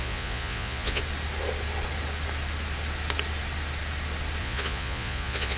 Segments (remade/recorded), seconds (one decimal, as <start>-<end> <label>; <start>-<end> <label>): 0.0-1.0 remade; 1.0-4.4 recorded; 4.4-5.6 remade